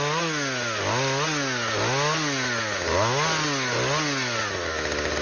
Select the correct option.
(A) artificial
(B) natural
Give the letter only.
B